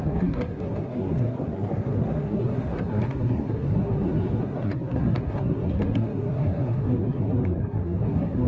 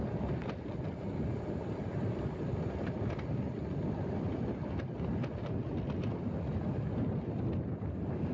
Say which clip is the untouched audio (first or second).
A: second